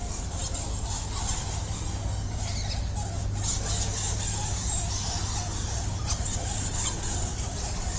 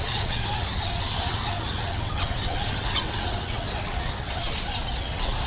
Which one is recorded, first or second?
first